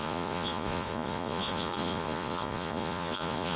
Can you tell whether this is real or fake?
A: fake